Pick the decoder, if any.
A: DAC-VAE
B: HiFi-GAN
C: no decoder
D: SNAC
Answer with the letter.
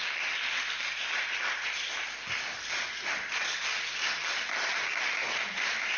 C